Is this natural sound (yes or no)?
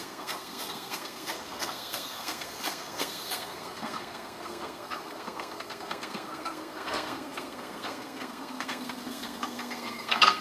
no